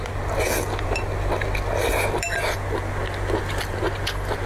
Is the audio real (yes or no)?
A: yes